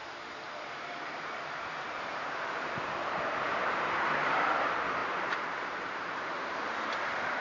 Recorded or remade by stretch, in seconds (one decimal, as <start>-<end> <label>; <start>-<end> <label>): 0.0-2.2 remade; 2.2-5.0 recorded; 5.0-6.7 remade; 6.7-7.4 recorded